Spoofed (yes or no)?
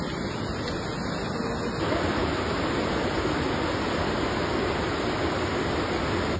no